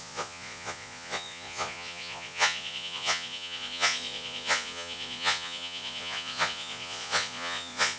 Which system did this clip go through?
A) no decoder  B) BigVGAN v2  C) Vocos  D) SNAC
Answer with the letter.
C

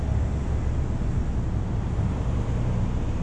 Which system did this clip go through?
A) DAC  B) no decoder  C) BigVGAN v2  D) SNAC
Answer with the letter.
B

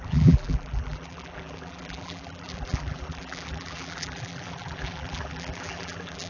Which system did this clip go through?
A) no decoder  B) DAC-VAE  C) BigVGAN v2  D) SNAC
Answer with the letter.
C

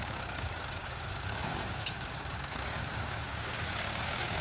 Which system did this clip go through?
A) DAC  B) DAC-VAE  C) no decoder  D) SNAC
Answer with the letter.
A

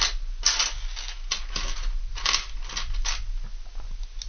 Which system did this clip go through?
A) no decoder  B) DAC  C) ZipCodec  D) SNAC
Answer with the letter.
A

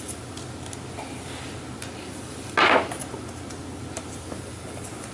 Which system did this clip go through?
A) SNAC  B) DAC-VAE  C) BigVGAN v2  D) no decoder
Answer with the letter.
D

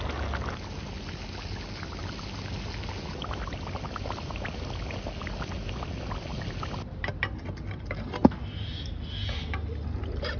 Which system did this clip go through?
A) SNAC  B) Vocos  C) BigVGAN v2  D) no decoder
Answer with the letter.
D